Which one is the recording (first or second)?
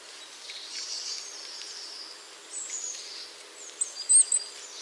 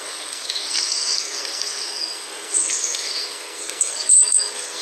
first